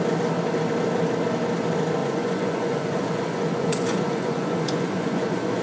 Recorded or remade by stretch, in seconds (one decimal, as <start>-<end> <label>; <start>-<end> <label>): 0.0-2.0 recorded; 2.0-5.6 remade